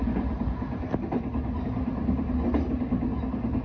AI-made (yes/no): no